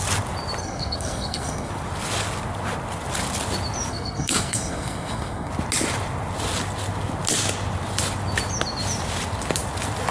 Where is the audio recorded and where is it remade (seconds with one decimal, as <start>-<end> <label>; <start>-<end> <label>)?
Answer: 0.0-0.6 recorded; 0.6-1.7 remade; 1.7-3.9 recorded; 3.9-5.5 remade; 5.5-10.1 recorded